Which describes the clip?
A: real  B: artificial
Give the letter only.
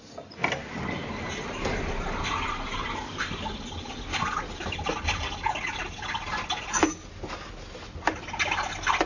A